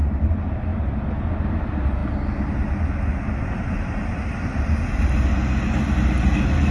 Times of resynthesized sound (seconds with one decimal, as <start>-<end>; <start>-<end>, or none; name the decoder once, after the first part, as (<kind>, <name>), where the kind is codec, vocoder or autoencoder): none